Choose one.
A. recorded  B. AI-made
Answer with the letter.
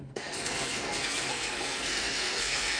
B